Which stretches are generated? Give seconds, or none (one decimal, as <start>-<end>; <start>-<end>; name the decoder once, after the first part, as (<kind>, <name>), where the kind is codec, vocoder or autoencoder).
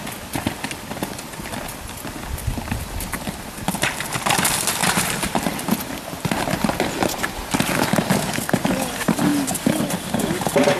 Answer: 4.8-5.4 (vocoder, BigVGAN v2)